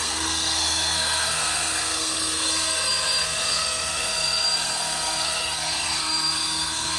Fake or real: fake